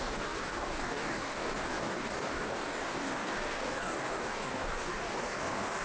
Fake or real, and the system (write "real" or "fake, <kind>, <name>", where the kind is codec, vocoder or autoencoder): fake, codec, DAC